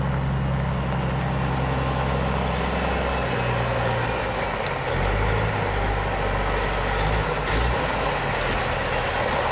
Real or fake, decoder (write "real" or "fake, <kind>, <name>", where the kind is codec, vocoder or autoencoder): real